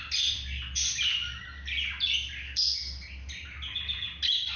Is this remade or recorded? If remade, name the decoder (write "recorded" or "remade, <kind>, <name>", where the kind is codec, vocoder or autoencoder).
recorded